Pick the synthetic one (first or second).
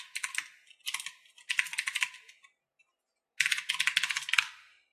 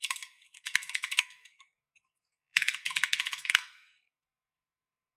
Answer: second